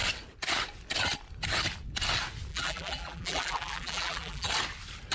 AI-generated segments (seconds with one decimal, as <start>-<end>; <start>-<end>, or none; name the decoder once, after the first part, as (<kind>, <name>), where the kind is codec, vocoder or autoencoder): 2.5-4.5 (vocoder, BigVGAN v2)